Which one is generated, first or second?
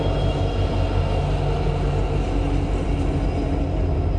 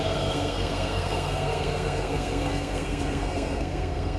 second